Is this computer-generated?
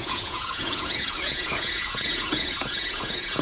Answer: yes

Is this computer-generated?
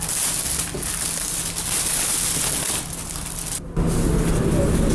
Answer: no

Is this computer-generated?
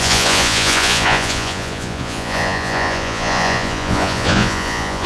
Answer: yes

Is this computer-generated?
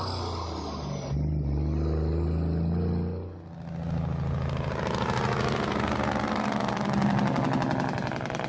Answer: no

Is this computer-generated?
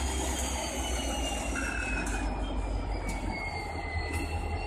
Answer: no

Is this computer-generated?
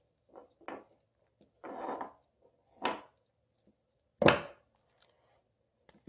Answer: no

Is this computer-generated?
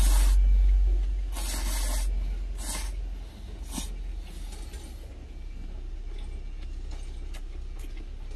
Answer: no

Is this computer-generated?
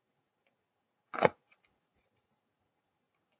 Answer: yes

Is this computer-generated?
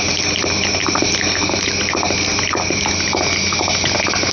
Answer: no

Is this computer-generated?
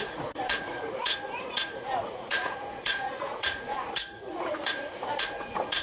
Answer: yes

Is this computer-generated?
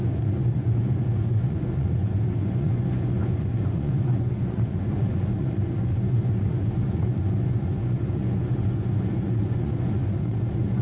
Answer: yes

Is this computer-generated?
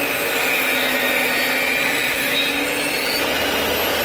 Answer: no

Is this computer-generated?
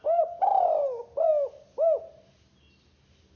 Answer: no